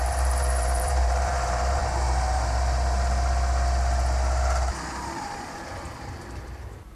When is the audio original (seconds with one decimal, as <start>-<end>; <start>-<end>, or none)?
1.8-4.9